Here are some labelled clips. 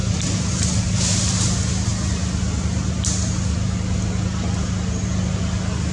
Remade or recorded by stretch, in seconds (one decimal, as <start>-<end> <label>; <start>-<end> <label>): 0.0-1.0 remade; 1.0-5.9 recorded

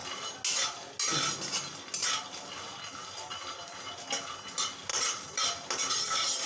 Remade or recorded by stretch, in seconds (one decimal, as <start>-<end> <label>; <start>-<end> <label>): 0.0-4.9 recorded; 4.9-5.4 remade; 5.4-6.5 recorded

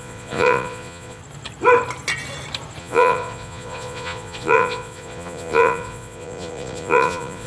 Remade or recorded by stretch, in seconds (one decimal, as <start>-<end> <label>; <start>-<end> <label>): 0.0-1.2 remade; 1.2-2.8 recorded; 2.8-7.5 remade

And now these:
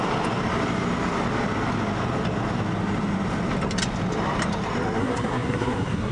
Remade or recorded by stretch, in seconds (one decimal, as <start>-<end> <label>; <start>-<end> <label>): 0.0-5.0 recorded; 5.0-6.1 remade

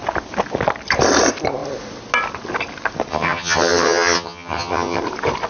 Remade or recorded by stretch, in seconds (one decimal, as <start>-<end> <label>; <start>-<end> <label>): 0.0-3.1 recorded; 3.1-5.0 remade; 5.0-5.5 recorded